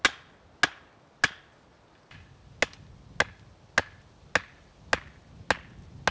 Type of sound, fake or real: real